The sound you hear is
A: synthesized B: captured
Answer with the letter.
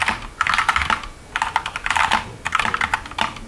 B